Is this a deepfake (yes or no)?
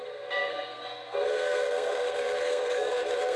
yes